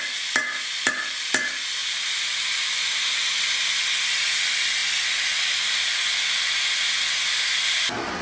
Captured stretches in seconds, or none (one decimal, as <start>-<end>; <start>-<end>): 0.0-0.4; 1.1-1.8; 3.8-8.2